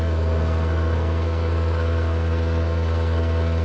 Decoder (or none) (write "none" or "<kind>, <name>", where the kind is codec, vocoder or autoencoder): codec, SNAC